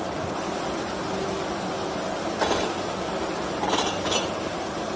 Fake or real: real